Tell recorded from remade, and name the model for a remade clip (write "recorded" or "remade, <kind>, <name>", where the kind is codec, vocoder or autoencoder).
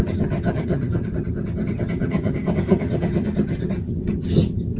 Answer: remade, vocoder, HiFi-GAN